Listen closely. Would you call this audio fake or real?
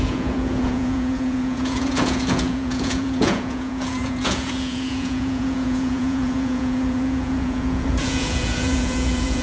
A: fake